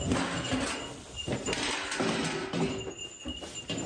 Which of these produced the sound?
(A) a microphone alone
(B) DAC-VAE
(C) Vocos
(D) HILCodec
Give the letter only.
A